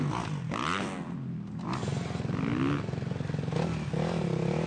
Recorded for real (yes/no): yes